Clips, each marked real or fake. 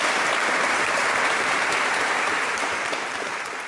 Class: fake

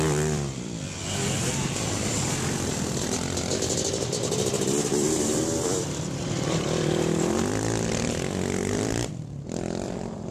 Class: fake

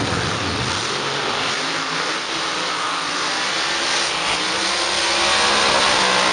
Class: real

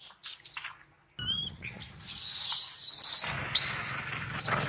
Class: real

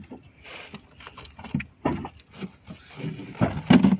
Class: real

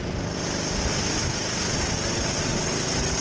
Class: fake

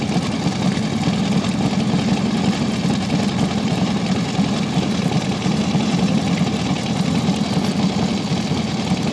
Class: real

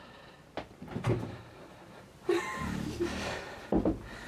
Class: fake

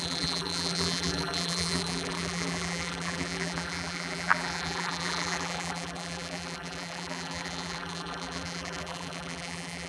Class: fake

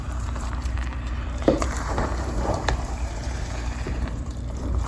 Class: fake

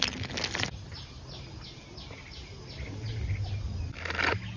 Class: real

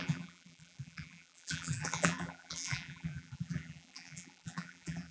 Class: fake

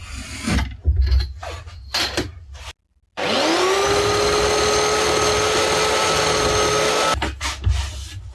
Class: real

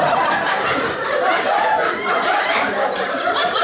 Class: fake